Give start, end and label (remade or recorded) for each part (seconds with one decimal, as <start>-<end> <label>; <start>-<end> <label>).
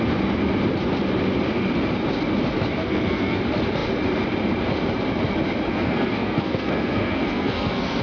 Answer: 0.0-2.8 recorded; 2.8-3.4 remade; 3.4-5.7 recorded; 5.7-8.0 remade